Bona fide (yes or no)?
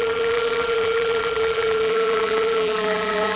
no